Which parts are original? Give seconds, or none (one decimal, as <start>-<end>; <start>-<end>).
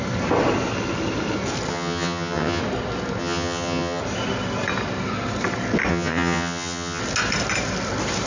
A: 0.0-1.7; 2.6-3.2; 4.0-5.9; 7.0-8.3